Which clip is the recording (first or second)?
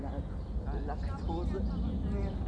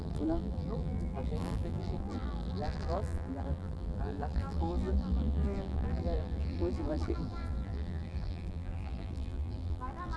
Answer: first